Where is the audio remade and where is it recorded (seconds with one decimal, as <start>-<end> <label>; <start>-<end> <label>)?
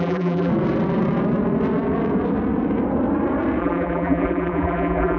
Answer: 0.0-0.5 remade; 0.5-3.6 recorded; 3.6-5.2 remade